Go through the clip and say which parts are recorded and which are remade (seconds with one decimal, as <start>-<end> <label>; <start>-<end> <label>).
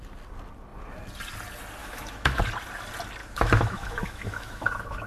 0.0-1.8 recorded; 1.8-2.4 remade; 2.4-3.2 recorded; 3.2-5.1 remade